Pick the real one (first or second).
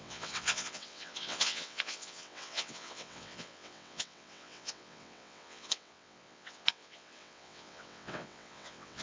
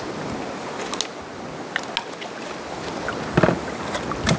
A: second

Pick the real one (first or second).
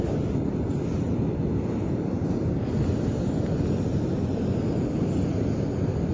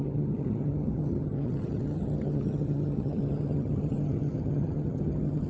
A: first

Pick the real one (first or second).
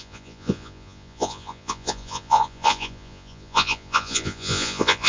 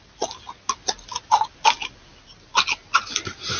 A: second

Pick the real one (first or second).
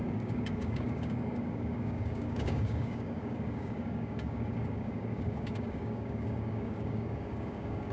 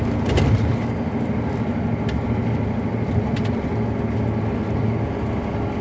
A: second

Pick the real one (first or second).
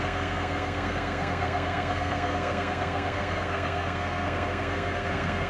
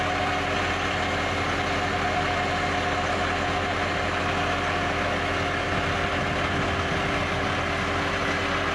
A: second